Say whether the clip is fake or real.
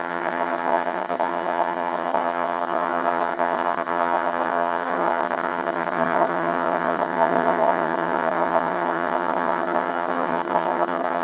fake